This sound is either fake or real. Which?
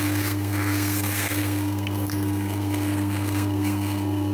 fake